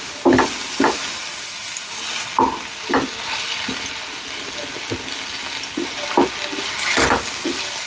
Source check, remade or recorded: recorded